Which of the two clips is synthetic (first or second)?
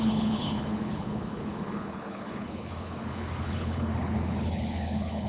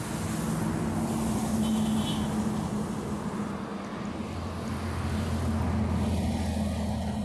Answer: first